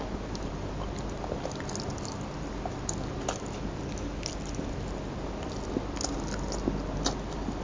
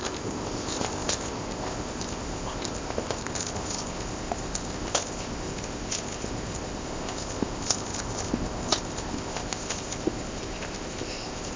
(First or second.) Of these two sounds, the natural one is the first